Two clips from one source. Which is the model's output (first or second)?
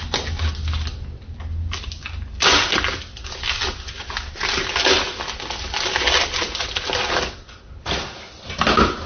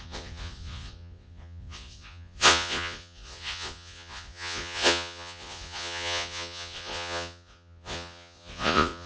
second